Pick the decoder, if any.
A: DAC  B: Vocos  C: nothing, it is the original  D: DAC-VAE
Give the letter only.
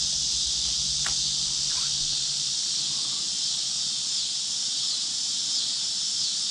C